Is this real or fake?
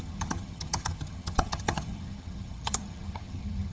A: fake